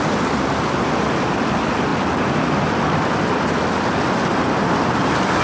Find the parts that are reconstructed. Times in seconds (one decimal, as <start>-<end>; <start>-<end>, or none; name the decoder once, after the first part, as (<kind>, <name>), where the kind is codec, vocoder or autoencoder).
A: none